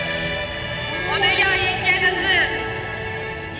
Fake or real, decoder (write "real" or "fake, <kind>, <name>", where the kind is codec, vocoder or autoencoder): real